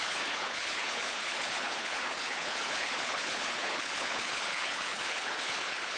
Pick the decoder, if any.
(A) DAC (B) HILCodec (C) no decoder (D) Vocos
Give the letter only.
B